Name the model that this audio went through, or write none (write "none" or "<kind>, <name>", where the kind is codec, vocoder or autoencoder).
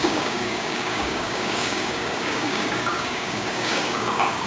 codec, DAC